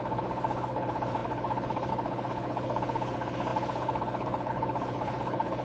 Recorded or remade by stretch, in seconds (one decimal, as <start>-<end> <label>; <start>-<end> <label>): 0.0-5.6 remade